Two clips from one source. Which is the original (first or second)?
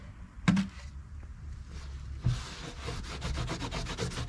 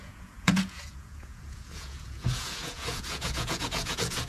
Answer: first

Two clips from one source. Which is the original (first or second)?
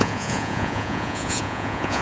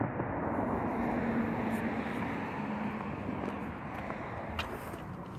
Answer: second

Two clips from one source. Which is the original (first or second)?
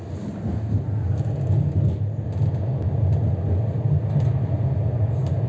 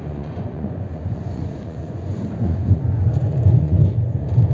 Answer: first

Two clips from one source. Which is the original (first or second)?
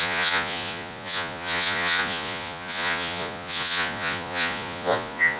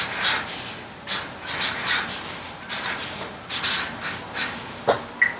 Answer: second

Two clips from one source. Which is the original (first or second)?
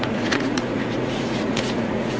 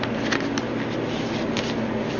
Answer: second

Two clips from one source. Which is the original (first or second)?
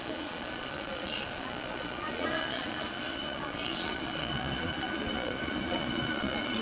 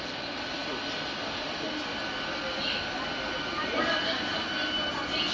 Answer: second